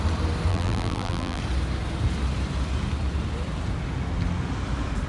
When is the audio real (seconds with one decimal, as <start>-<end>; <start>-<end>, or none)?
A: 0.0-0.5; 1.4-5.1